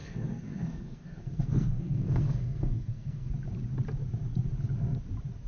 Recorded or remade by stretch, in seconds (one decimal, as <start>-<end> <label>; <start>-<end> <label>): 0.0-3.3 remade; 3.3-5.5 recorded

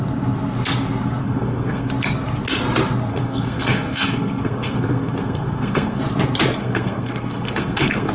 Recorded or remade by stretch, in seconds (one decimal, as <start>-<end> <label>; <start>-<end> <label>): 0.0-1.2 recorded; 1.2-1.9 remade; 1.9-3.1 recorded; 3.1-6.0 remade; 6.0-6.6 recorded; 6.6-8.1 remade

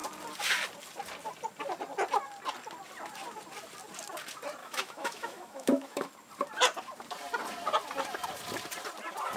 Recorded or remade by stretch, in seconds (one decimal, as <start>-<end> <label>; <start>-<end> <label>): 0.0-4.6 recorded; 4.6-6.1 remade; 6.1-9.4 recorded

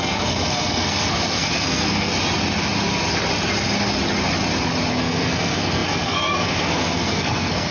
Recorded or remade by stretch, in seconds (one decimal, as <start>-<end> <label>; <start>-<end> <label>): 0.0-2.1 remade; 2.1-4.9 recorded; 4.9-7.7 remade

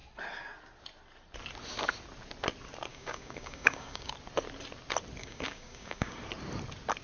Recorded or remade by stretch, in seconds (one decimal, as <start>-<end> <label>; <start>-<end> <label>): 0.0-2.9 recorded; 2.9-4.1 remade; 4.1-5.2 recorded; 5.2-6.2 remade; 6.2-7.0 recorded

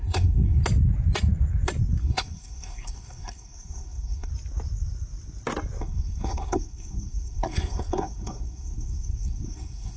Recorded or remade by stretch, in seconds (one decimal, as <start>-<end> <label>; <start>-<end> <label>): 0.0-0.6 remade; 0.6-2.0 recorded; 2.0-4.3 remade; 4.3-5.8 recorded; 5.8-10.0 remade